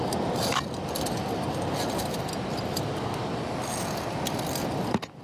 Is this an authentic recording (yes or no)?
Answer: yes